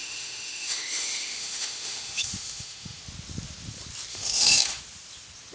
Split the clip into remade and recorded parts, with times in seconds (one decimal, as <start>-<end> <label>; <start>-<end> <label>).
0.0-3.0 remade; 3.0-4.1 recorded; 4.1-4.8 remade; 4.8-5.5 recorded